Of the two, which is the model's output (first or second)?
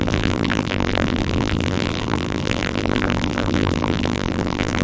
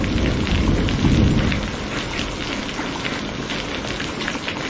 first